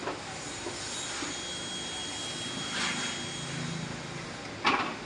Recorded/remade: recorded